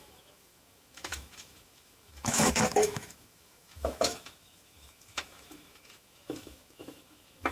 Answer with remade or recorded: remade